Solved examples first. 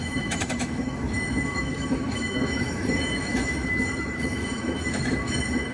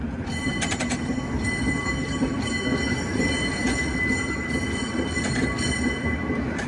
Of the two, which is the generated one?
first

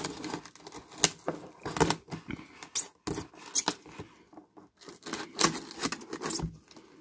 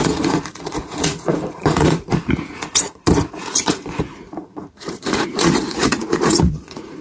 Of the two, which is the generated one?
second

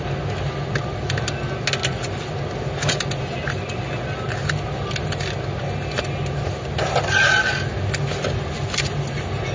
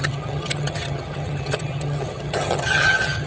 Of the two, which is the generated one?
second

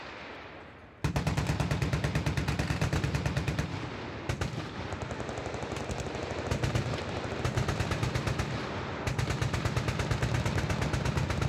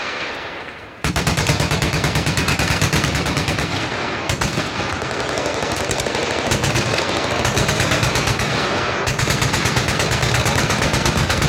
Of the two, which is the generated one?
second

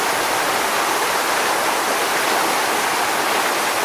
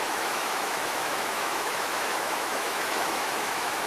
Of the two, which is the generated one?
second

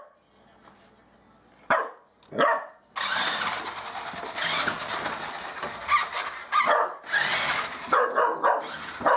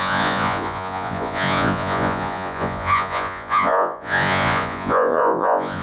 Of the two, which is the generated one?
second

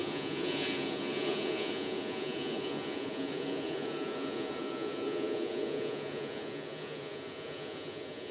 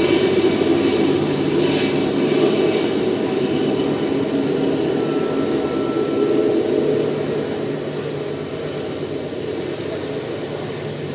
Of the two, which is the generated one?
first